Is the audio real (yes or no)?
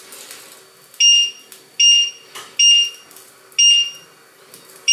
yes